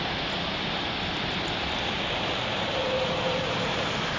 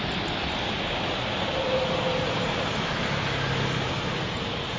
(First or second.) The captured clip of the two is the second